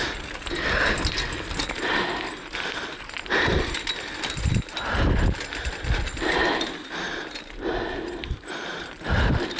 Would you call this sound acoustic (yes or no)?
yes